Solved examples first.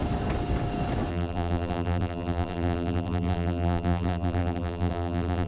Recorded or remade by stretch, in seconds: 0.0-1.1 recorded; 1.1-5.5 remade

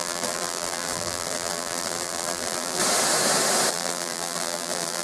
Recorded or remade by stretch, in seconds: 0.0-2.8 remade; 2.8-3.7 recorded; 3.7-5.0 remade

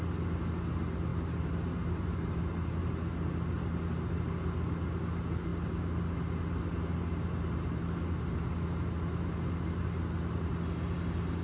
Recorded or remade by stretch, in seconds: 0.0-1.1 recorded; 1.1-2.4 remade; 2.4-11.4 recorded

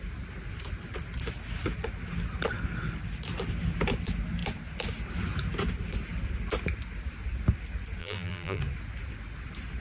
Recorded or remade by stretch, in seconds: 0.0-8.0 recorded; 8.0-8.6 remade; 8.6-9.8 recorded

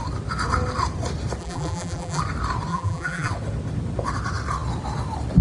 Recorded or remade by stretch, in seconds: 0.0-1.4 recorded; 1.4-2.2 remade; 2.2-2.7 recorded; 2.7-3.3 remade; 3.3-5.4 recorded

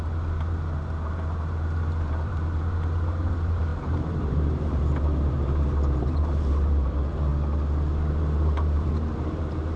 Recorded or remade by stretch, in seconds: 0.0-7.3 remade; 7.3-8.1 recorded; 8.1-9.8 remade

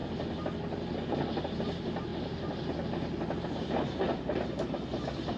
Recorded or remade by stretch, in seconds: 0.0-1.4 recorded; 1.4-2.1 remade; 2.1-3.4 recorded; 3.4-5.4 remade

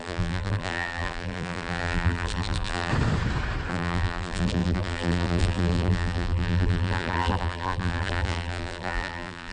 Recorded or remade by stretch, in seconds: 0.0-2.9 remade; 2.9-3.7 recorded; 3.7-9.5 remade